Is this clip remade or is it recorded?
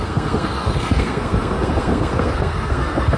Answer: remade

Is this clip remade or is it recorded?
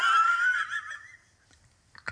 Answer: recorded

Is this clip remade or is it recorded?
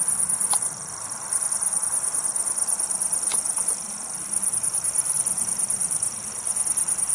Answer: recorded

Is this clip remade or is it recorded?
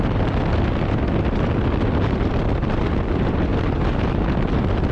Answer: recorded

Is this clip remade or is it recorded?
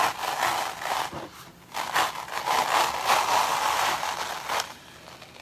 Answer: recorded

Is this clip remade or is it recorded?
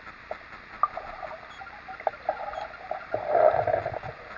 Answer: recorded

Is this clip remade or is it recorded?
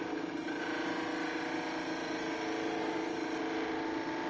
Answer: recorded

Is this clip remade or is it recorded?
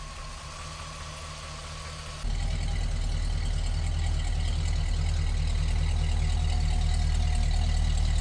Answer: recorded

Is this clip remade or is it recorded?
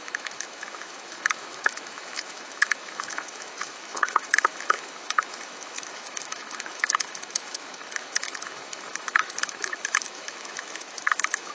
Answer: remade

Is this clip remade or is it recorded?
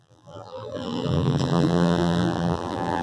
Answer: remade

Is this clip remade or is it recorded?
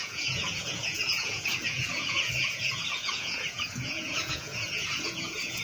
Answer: remade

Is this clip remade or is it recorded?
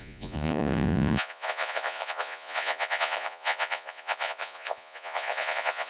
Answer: remade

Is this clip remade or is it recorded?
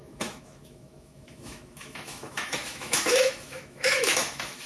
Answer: remade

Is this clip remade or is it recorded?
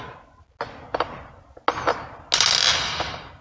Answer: recorded